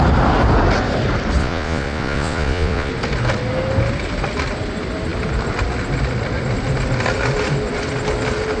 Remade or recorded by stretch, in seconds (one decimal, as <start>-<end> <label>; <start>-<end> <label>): 0.0-1.4 recorded; 1.4-2.9 remade; 2.9-8.6 recorded